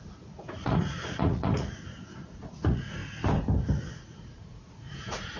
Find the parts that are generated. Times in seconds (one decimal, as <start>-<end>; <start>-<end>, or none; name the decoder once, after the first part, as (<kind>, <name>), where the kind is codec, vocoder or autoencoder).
0.0-3.0 (vocoder, Vocos); 3.9-5.4